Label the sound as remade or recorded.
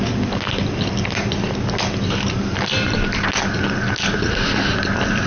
recorded